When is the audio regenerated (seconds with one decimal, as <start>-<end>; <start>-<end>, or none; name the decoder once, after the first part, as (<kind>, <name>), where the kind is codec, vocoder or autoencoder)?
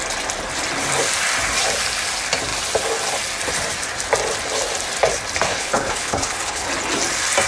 5.5-6.7 (codec, HILCodec)